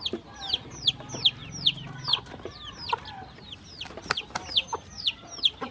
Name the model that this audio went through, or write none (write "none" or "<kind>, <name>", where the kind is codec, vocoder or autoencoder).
none